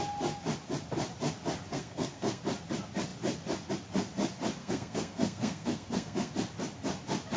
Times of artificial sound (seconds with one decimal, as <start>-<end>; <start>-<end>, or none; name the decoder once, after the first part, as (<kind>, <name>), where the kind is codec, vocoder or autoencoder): 1.7-2.4 (codec, SNAC); 4.6-6.3